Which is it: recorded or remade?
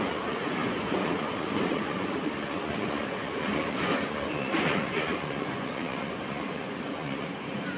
remade